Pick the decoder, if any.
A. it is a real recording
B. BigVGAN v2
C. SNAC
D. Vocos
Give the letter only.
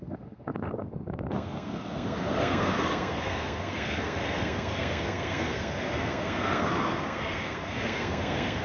C